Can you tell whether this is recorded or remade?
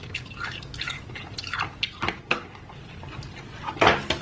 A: recorded